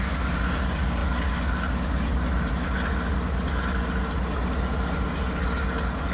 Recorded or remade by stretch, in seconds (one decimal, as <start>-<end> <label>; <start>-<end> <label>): 0.0-6.1 recorded